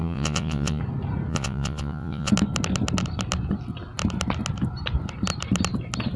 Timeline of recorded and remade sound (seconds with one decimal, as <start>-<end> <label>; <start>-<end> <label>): 0.0-0.8 remade; 0.8-1.3 recorded; 1.3-2.3 remade; 2.3-6.2 recorded